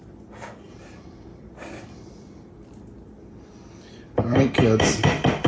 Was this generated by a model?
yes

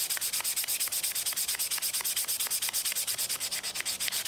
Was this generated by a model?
no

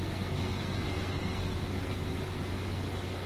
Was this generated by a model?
yes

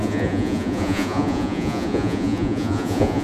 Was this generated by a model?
yes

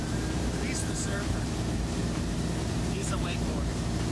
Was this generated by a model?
yes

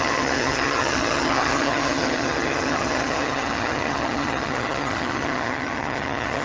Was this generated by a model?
yes